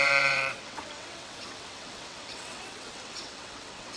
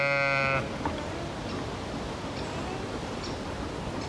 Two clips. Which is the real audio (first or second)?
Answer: second